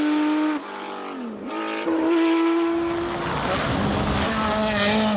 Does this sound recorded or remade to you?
recorded